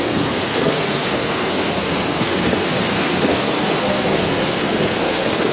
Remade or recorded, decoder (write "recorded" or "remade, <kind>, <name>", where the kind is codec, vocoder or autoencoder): remade, codec, SNAC